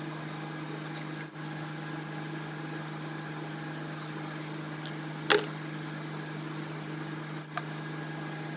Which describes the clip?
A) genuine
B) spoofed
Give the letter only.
A